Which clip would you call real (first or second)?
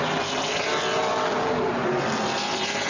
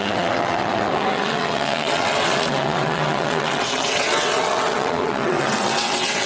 first